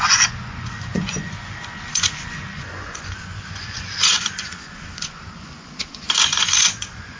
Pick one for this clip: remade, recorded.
remade